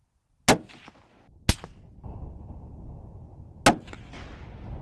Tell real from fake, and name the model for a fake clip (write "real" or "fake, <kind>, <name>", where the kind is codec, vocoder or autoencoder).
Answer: real